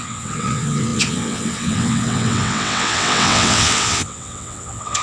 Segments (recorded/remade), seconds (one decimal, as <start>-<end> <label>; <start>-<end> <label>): 0.0-5.0 remade